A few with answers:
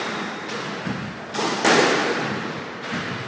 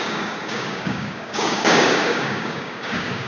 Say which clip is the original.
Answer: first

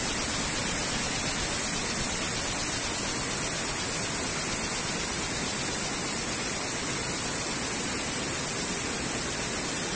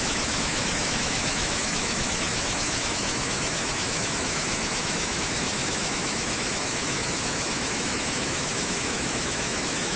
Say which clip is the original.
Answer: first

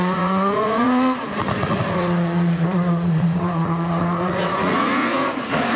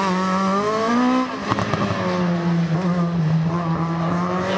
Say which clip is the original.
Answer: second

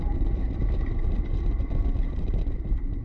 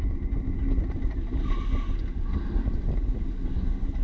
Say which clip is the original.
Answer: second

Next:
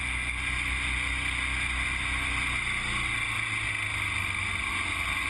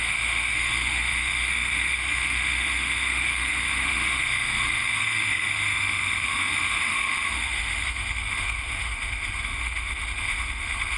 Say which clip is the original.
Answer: first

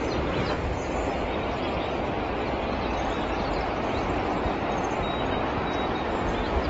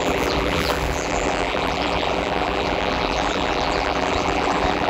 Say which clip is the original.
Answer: first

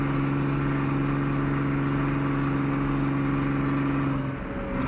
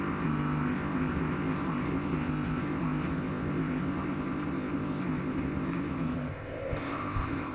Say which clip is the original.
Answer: first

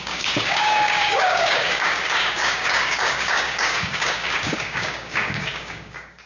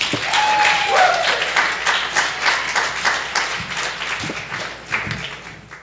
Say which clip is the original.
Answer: second